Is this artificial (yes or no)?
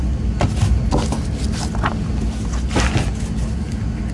no